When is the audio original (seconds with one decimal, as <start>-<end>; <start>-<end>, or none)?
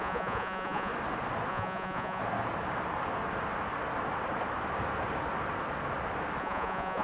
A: 0.9-1.5; 2.2-6.4